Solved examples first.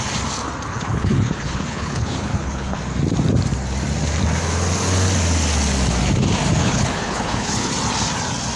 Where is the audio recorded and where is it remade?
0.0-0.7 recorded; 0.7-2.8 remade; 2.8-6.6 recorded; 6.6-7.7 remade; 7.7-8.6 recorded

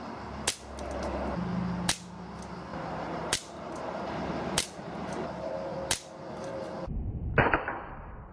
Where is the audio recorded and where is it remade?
0.0-2.7 recorded; 2.7-5.5 remade; 5.5-8.3 recorded

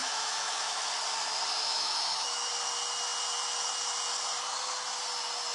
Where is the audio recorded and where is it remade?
0.0-0.9 remade; 0.9-1.6 recorded; 1.6-2.5 remade; 2.5-5.5 recorded

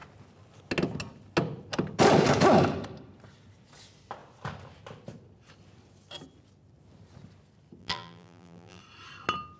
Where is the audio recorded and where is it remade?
0.0-7.8 recorded; 7.8-8.8 remade; 8.8-9.6 recorded

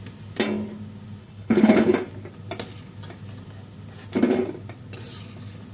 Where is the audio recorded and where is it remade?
0.0-1.2 recorded; 1.2-1.9 remade; 1.9-5.7 recorded

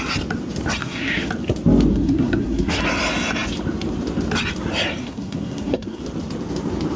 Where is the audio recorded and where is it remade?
0.0-0.8 recorded; 0.8-1.3 remade; 1.3-1.9 recorded; 1.9-2.8 remade; 2.8-5.0 recorded; 5.0-6.0 remade; 6.0-7.0 recorded

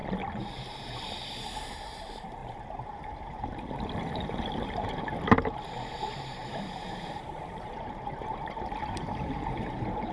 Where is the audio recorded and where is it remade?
0.0-1.0 recorded; 1.0-10.1 remade

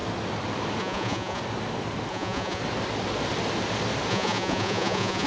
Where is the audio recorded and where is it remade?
0.0-0.8 recorded; 0.8-1.4 remade; 1.4-2.1 recorded; 2.1-2.6 remade; 2.6-4.1 recorded; 4.1-5.3 remade